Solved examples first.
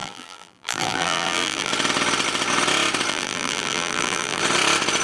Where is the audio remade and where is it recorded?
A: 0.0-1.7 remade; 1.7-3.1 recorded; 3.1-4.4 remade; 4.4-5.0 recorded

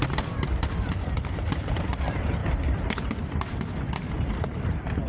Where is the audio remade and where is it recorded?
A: 0.0-2.4 remade; 2.4-3.0 recorded; 3.0-5.1 remade

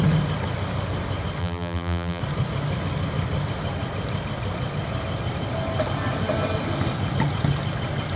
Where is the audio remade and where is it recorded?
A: 0.0-1.4 recorded; 1.4-2.2 remade; 2.2-8.2 recorded

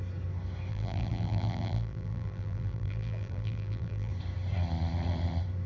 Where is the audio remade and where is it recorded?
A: 0.0-0.7 recorded; 0.7-4.1 remade; 4.1-5.7 recorded

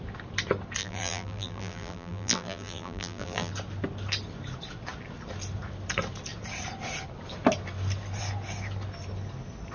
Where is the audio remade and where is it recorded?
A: 0.0-0.8 recorded; 0.8-3.5 remade; 3.5-9.7 recorded

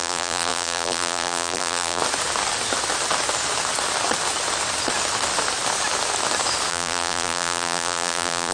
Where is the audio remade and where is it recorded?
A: 0.0-2.0 remade; 2.0-6.7 recorded; 6.7-8.5 remade